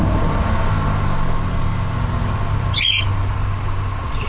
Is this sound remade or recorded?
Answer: recorded